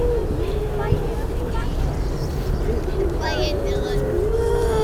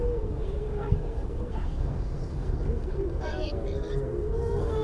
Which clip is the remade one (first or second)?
second